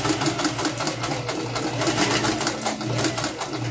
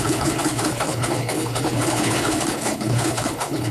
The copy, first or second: second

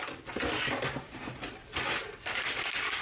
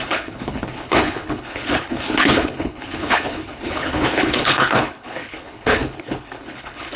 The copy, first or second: second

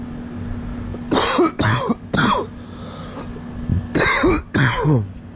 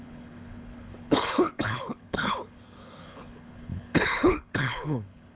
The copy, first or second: second